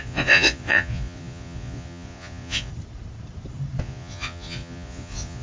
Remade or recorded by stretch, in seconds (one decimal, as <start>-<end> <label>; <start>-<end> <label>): 0.0-2.7 remade; 2.7-3.8 recorded; 3.8-5.4 remade

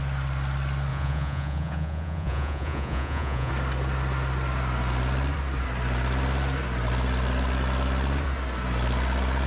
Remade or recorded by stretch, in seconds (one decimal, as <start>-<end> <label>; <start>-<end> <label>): 0.0-0.9 recorded; 0.9-3.5 remade; 3.5-9.5 recorded

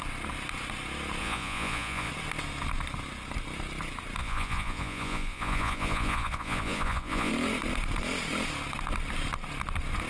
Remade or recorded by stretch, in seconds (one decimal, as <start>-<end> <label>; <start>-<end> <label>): 0.0-1.2 recorded; 1.2-2.1 remade; 2.1-4.2 recorded; 4.2-7.3 remade; 7.3-10.1 recorded

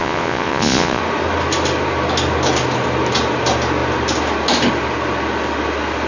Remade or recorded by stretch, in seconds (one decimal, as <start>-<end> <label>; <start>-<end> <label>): 0.0-1.0 remade; 1.0-6.1 recorded

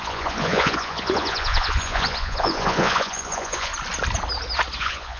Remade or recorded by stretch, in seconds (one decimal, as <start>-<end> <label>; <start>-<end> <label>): 0.0-3.7 remade; 3.7-4.8 recorded; 4.8-5.2 remade

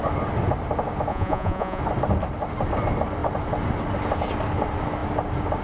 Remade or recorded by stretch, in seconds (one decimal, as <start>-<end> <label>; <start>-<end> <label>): 0.0-1.1 recorded; 1.1-1.8 remade; 1.8-5.6 recorded

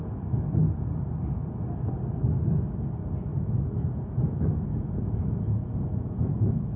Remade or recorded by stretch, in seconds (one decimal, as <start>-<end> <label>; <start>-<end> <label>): 0.0-3.3 recorded; 3.3-6.8 remade

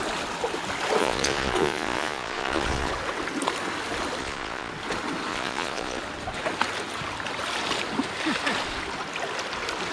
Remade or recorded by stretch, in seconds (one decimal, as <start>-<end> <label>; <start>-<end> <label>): 0.0-1.0 recorded; 1.0-2.9 remade; 2.9-4.2 recorded; 4.2-4.7 remade; 4.7-5.3 recorded; 5.3-6.0 remade; 6.0-9.9 recorded